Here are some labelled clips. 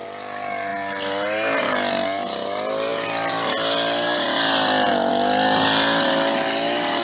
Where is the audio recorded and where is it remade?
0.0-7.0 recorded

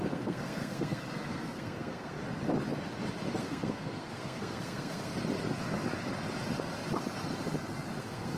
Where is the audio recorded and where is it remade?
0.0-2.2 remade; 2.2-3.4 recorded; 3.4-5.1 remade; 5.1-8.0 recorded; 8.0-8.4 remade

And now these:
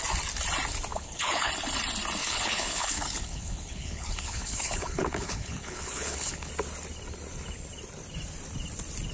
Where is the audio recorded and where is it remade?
0.0-0.9 recorded; 0.9-1.5 remade; 1.5-2.2 recorded; 2.2-6.5 remade; 6.5-9.1 recorded

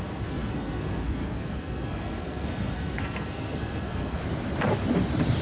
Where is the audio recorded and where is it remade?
0.0-4.2 remade; 4.2-5.4 recorded

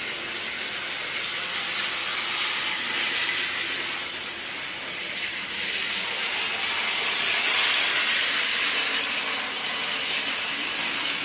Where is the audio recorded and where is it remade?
0.0-11.2 recorded

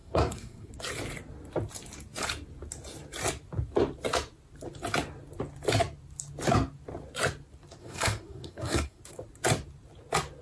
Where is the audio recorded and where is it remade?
0.0-0.7 remade; 0.7-7.8 recorded; 7.8-9.0 remade; 9.0-10.4 recorded

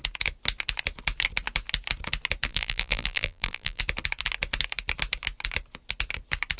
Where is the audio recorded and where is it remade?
0.0-2.5 recorded; 2.5-3.8 remade; 3.8-6.6 recorded

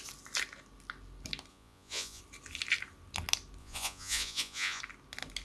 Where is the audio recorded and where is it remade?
0.0-1.5 recorded; 1.5-2.2 remade; 2.2-3.6 recorded; 3.6-4.8 remade; 4.8-5.4 recorded